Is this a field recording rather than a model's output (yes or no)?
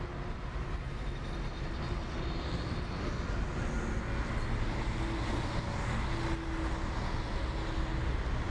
yes